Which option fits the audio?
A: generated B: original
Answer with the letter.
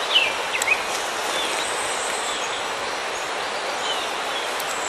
B